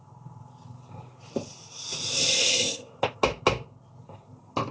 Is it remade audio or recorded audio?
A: recorded